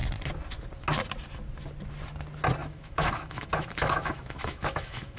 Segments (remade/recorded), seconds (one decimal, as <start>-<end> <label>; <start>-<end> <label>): 0.0-2.6 recorded; 2.6-5.2 remade